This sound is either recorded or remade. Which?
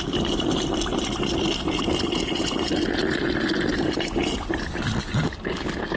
recorded